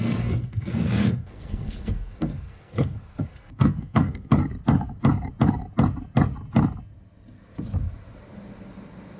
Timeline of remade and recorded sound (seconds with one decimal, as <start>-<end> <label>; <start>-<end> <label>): 0.0-4.4 remade; 4.4-9.2 recorded